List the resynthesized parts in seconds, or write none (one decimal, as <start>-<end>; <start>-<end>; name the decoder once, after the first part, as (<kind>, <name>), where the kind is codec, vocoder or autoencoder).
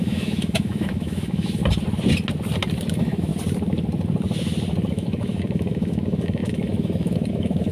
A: 0.0-1.6 (autoencoder, DAC-VAE); 2.9-3.3; 4.9-7.7